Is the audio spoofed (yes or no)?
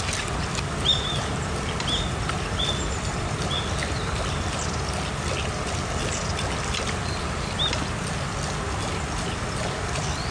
no